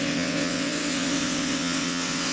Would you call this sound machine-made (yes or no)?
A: yes